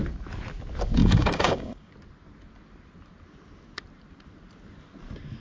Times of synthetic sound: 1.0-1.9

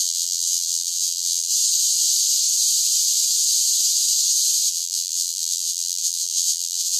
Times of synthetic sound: 0.0-1.5; 4.7-7.0

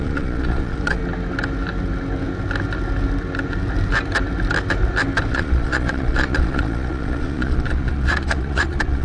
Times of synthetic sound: 0.0-1.0; 5.3-9.0